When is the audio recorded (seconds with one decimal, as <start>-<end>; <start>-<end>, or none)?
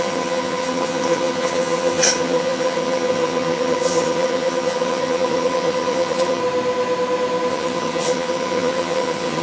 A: 6.4-7.5